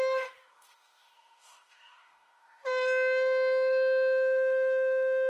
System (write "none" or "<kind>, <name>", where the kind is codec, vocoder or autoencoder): autoencoder, DAC-VAE